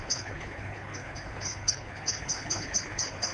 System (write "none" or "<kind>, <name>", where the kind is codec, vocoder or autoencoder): codec, HILCodec